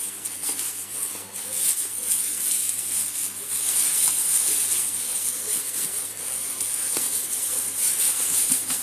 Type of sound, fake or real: fake